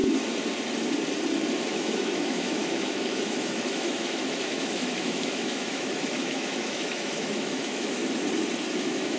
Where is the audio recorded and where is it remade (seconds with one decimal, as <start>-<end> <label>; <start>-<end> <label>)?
0.0-1.6 recorded; 1.6-8.0 remade; 8.0-8.7 recorded; 8.7-9.2 remade